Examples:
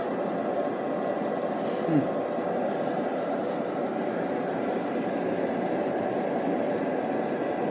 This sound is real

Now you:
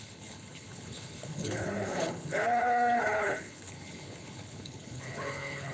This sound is fake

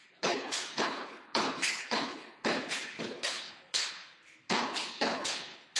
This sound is fake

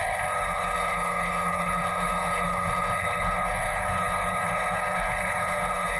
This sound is fake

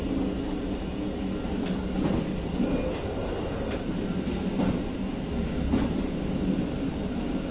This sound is real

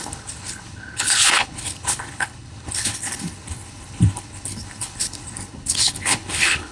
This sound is fake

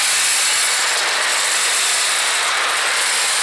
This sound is real